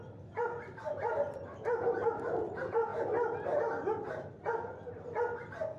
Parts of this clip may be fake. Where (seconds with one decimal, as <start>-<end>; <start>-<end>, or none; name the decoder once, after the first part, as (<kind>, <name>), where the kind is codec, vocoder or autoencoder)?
none